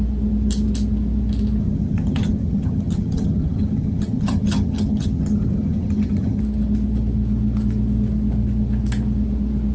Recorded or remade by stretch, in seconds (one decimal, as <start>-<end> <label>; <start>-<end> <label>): 0.0-1.6 recorded; 1.6-6.4 remade; 6.4-9.7 recorded